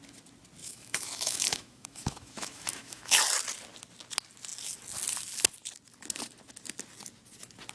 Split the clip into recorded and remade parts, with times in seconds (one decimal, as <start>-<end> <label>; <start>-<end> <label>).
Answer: 0.0-0.6 recorded; 0.6-3.2 remade; 3.2-7.7 recorded